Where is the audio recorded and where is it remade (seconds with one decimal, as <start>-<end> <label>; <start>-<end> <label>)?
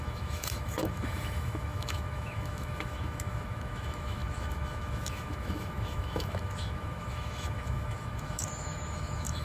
0.0-9.4 remade